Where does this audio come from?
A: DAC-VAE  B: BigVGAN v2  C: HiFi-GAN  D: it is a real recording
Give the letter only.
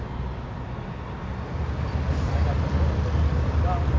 D